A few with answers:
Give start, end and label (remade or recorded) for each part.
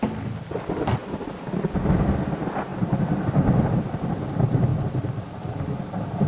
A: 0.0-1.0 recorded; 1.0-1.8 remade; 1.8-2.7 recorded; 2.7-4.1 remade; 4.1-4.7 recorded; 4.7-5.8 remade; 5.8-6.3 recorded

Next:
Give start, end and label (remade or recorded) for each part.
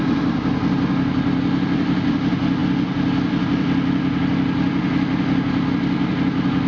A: 0.0-6.7 recorded